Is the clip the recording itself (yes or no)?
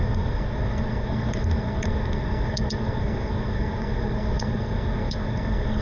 no